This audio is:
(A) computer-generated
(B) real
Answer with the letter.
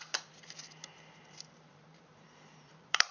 A